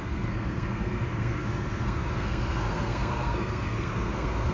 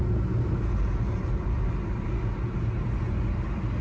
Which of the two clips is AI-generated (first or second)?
first